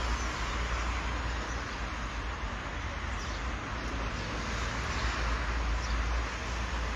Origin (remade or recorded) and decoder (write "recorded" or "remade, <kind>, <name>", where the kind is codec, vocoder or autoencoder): recorded